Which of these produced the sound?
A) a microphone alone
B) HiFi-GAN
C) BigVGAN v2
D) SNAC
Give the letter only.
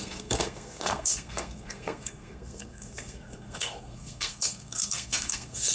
D